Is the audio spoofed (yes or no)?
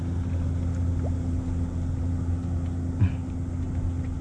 no